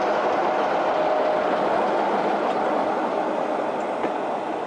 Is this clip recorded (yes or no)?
yes